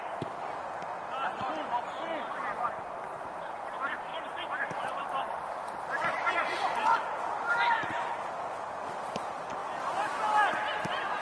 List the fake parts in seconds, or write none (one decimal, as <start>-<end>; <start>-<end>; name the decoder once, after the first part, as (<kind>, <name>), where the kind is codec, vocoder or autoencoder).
4.1-8.3 (vocoder, BigVGAN v2)